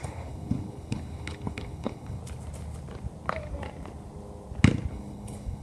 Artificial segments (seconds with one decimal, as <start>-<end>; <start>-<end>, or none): 0.0-2.2; 4.9-5.6